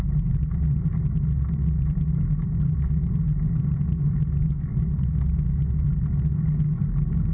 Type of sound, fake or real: real